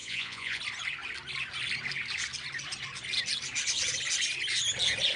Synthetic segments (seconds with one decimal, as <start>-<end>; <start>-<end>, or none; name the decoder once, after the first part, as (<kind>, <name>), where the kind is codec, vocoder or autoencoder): 0.0-0.6 (vocoder, Vocos)